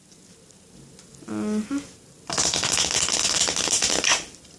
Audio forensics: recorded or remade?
recorded